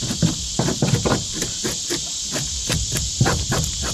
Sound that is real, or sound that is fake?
real